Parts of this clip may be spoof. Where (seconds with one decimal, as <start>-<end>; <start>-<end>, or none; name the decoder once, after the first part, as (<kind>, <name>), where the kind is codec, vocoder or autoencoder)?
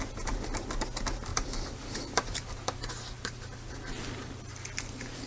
1.3-4.5 (vocoder, BigVGAN v2)